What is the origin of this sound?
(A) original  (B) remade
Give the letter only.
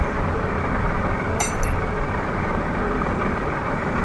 B